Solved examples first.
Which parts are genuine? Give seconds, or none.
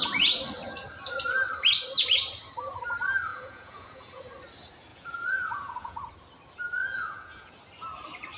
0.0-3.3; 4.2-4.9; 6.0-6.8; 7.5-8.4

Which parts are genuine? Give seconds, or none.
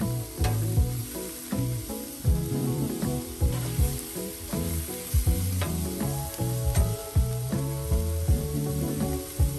0.0-2.6; 4.7-9.6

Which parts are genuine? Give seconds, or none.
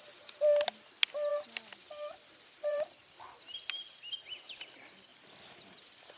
0.0-1.3; 3.2-5.1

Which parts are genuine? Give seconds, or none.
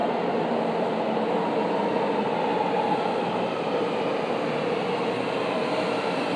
0.0-6.4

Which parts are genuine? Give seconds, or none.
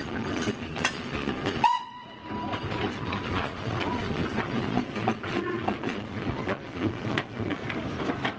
2.2-2.7; 7.6-8.4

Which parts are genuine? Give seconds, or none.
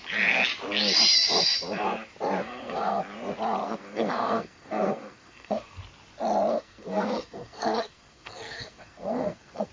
0.0-2.4; 3.0-3.6; 5.8-6.5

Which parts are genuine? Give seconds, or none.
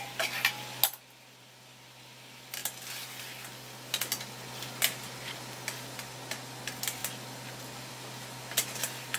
0.0-9.2